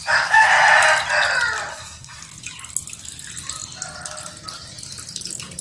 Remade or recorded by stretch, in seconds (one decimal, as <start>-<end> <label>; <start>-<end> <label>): 0.0-1.7 recorded; 1.7-2.2 remade; 2.2-5.6 recorded